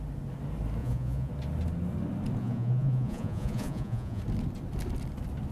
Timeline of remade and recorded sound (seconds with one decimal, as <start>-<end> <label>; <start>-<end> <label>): 0.0-0.8 recorded; 0.8-1.3 remade; 1.3-2.4 recorded; 2.4-4.2 remade; 4.2-5.5 recorded